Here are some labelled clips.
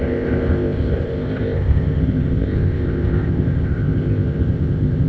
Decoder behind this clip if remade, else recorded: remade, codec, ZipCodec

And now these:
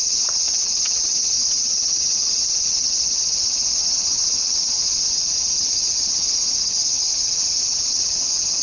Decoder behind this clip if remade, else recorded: remade, vocoder, HiFi-GAN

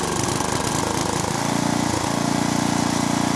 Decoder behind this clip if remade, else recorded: recorded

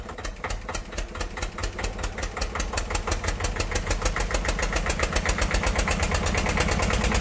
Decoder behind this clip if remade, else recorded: recorded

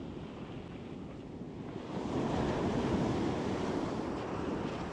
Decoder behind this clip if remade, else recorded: recorded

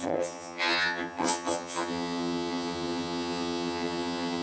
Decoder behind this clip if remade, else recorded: remade, vocoder, HiFi-GAN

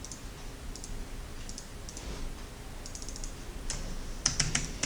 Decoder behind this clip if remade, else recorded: recorded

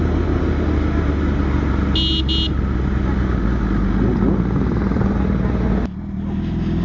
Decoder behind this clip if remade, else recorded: recorded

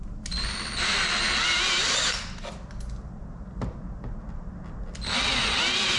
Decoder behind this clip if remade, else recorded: recorded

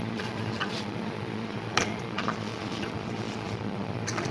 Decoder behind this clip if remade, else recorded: remade, vocoder, Vocos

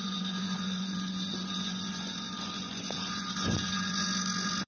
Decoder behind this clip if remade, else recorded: remade, vocoder, Vocos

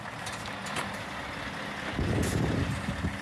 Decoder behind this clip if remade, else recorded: recorded